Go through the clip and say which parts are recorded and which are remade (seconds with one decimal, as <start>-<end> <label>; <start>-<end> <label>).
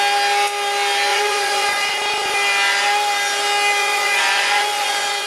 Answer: 0.0-1.1 recorded; 1.1-1.9 remade; 1.9-3.8 recorded; 3.8-5.3 remade